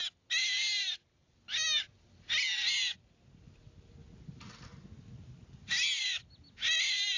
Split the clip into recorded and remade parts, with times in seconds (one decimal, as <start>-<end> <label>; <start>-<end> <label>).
0.0-7.2 recorded

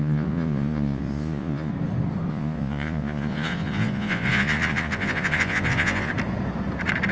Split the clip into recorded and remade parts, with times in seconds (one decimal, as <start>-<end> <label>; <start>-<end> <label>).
0.0-1.7 remade; 1.7-2.3 recorded; 2.3-6.1 remade; 6.1-7.1 recorded

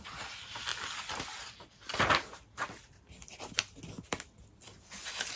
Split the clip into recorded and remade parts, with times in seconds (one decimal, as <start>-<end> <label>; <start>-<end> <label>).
0.0-0.7 recorded; 0.7-3.9 remade; 3.9-5.4 recorded

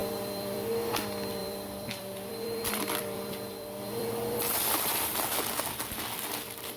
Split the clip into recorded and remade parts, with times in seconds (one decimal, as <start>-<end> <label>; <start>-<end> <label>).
0.0-0.7 remade; 0.7-1.4 recorded; 1.4-5.4 remade; 5.4-6.8 recorded